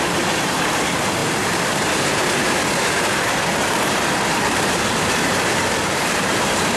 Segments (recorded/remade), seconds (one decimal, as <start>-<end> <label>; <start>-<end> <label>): 0.0-6.8 remade